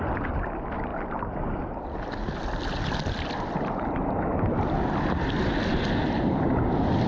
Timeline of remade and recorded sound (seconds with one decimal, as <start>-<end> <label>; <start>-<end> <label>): 0.0-7.1 recorded